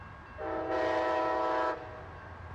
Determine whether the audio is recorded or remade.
recorded